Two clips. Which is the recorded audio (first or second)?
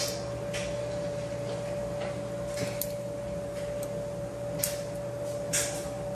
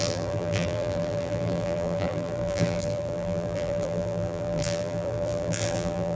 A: first